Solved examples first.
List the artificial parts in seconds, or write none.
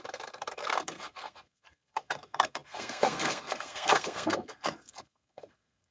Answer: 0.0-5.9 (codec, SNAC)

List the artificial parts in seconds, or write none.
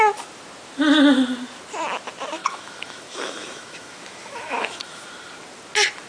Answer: 2.4-5.0 (autoencoder, DAC-VAE)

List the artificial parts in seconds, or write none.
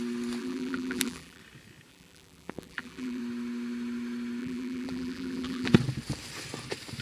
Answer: 0.4-1.4 (vocoder, BigVGAN v2); 1.9-3.2; 4.4-5.7